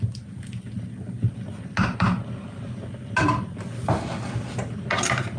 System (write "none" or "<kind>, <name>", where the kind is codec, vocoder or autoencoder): none